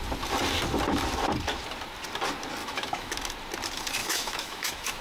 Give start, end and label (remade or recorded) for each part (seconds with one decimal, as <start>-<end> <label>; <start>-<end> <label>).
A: 0.0-2.6 recorded; 2.6-3.1 remade; 3.1-4.0 recorded; 4.0-5.0 remade